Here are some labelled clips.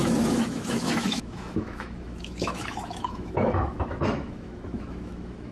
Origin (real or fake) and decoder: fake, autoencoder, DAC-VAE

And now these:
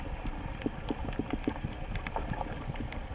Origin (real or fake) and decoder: real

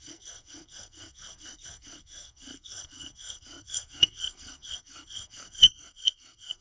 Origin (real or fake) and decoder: fake, codec, SNAC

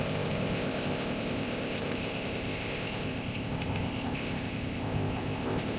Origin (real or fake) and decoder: fake, codec, ZipCodec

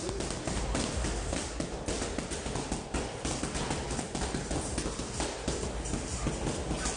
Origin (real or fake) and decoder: real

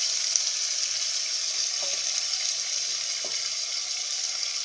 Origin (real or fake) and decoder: real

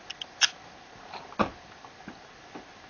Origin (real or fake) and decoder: real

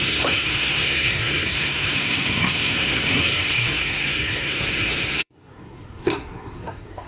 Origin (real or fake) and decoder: fake, codec, SNAC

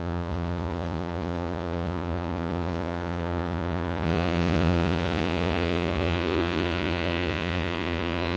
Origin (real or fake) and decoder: fake, vocoder, Vocos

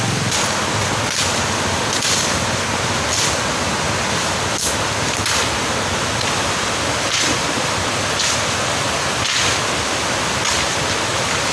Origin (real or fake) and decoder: real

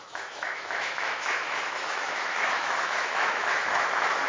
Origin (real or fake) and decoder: fake, autoencoder, DAC-VAE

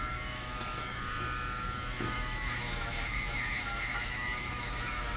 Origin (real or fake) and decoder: fake, autoencoder, DAC-VAE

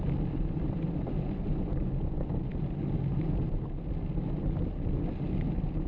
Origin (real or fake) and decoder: real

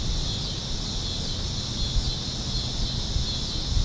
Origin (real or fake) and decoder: real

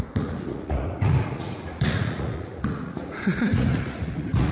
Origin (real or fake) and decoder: fake, vocoder, Vocos